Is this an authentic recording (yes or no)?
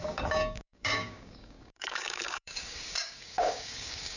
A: no